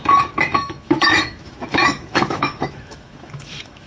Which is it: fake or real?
fake